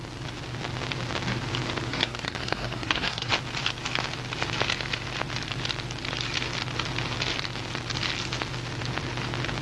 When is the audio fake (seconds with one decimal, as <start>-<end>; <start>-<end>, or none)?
1.9-3.3